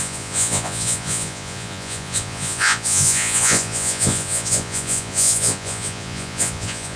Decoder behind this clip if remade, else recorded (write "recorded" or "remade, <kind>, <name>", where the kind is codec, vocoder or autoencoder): remade, vocoder, Vocos